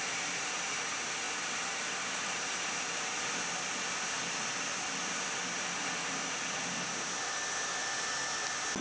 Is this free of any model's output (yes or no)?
yes